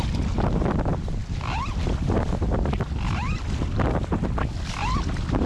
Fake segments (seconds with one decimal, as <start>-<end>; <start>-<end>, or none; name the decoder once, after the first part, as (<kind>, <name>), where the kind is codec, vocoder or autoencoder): none